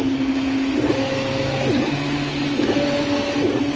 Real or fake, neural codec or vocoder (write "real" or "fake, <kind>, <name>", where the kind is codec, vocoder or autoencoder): real